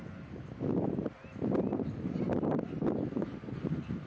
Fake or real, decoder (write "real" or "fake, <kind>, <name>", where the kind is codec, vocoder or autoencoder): real